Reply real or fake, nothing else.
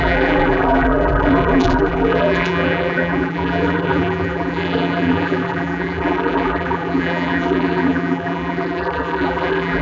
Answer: fake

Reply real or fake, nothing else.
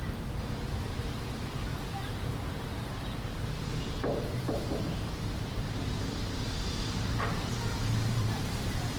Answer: fake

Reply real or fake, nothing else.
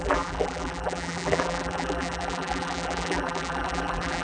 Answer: fake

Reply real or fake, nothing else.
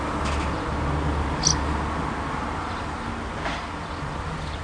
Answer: real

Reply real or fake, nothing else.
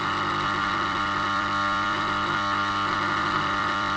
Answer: fake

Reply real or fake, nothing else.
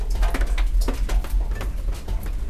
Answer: real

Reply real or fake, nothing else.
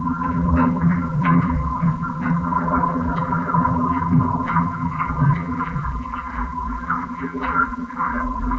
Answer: fake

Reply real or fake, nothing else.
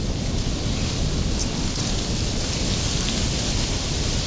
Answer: fake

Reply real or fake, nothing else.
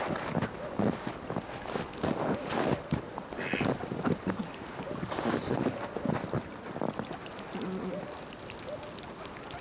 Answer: real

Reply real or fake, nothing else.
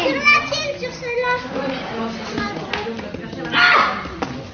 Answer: real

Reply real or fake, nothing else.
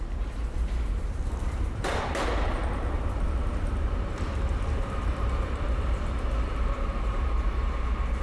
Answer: fake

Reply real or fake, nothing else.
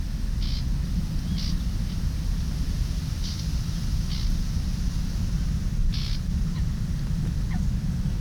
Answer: real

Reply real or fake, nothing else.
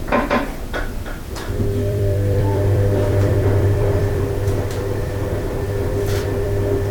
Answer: fake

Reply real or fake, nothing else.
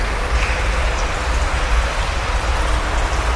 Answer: real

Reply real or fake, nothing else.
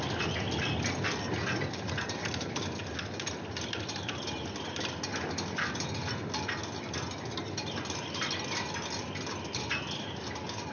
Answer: real